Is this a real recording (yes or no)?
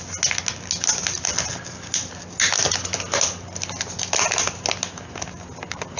yes